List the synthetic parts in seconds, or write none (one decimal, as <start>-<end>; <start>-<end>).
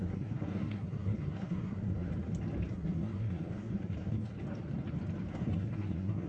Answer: 0.0-2.1; 2.7-4.3; 5.3-6.3